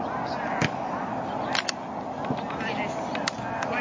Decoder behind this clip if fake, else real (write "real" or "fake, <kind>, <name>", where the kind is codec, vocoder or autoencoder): real